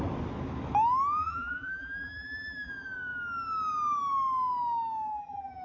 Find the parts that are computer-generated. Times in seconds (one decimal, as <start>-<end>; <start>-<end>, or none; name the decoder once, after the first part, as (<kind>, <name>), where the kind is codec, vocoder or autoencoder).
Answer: 1.2-2.7 (vocoder, BigVGAN v2); 5.1-5.6